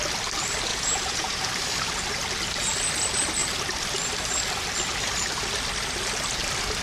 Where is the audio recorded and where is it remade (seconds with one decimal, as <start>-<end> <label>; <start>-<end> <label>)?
0.0-0.7 recorded; 0.7-1.5 remade; 1.5-6.8 recorded